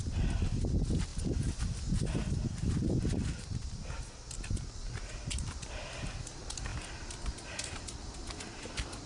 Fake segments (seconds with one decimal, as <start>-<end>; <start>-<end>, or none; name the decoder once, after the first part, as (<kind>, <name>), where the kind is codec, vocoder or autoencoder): none